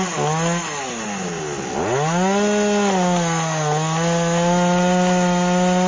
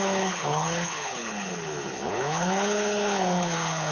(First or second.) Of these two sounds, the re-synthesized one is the second